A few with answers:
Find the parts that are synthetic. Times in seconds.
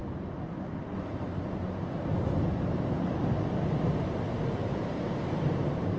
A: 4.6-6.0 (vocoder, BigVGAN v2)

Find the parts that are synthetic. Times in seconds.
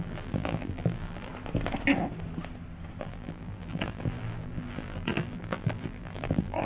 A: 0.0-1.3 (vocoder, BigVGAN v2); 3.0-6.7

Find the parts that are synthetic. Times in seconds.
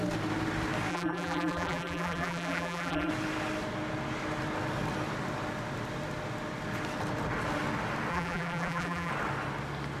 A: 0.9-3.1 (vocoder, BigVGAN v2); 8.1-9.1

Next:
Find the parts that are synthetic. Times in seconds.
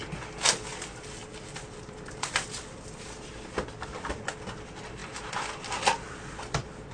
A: 0.7-3.3 (vocoder, BigVGAN v2); 5.0-6.4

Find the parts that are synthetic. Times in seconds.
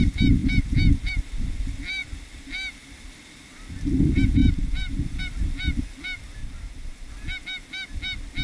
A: 4.4-5.2 (vocoder, BigVGAN v2); 6.4-7.1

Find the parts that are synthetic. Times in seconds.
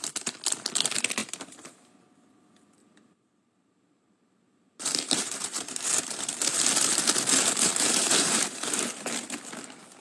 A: 1.2-1.9 (vocoder, BigVGAN v2); 2.8-6.2; 7.7-8.8